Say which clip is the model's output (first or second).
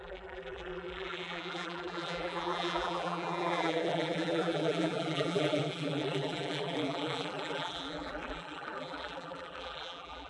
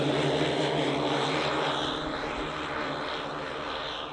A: first